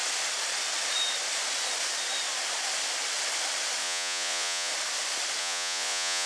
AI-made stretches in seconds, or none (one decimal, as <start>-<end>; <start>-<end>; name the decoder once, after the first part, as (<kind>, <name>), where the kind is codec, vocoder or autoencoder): 3.8-4.7 (vocoder, Vocos); 5.4-6.3